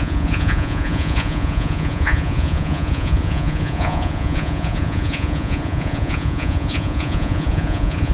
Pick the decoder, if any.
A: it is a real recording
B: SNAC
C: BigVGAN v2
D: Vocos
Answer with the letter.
D